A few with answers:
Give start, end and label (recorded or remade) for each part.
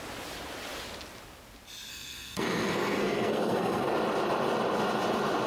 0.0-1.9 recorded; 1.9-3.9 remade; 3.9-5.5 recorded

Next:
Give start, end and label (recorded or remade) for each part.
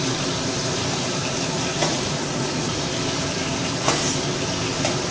0.0-1.8 recorded; 1.8-2.8 remade; 2.8-5.1 recorded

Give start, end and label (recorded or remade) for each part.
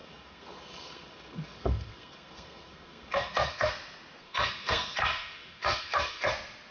0.0-3.7 remade; 3.7-4.2 recorded; 4.2-6.3 remade; 6.3-6.7 recorded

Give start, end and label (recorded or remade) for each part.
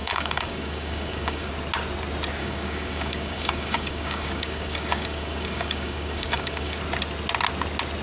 0.0-1.5 remade; 1.5-2.4 recorded; 2.4-6.8 remade; 6.8-8.0 recorded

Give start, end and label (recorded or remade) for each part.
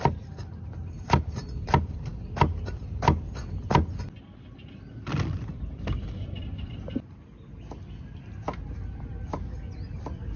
0.0-10.4 recorded